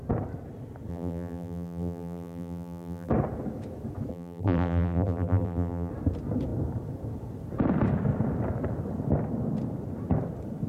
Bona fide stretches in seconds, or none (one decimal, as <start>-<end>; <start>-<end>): 0.0-0.9; 3.1-4.1; 5.9-10.7